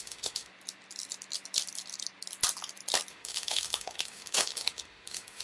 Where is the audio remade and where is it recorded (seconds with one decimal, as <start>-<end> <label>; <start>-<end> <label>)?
0.0-0.5 remade; 0.5-3.1 recorded; 3.1-5.4 remade